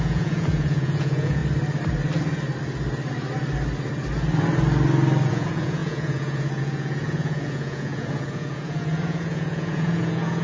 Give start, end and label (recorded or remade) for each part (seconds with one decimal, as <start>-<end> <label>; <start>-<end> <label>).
0.0-1.4 remade; 1.4-5.3 recorded; 5.3-10.4 remade